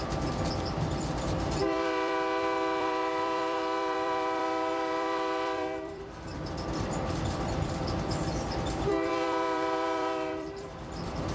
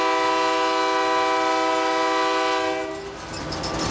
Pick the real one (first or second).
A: second